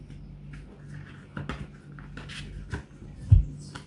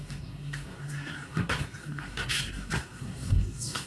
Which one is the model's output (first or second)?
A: second